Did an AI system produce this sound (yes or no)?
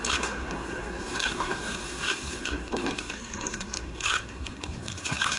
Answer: yes